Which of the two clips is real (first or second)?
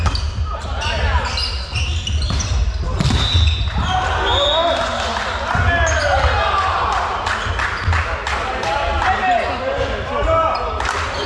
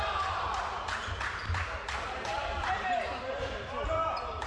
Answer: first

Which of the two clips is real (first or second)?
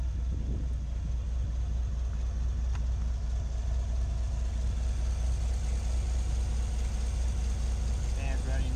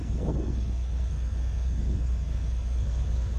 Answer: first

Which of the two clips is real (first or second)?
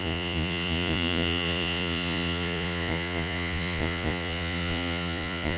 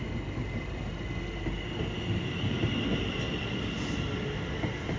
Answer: second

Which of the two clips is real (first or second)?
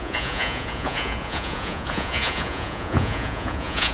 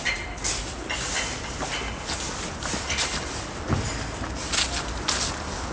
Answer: second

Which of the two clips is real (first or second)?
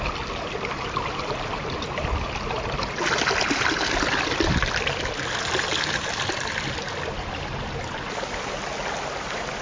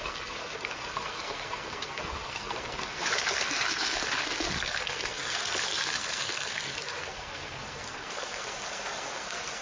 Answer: first